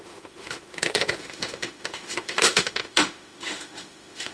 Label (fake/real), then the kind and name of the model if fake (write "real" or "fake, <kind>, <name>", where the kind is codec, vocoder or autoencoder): fake, autoencoder, DAC-VAE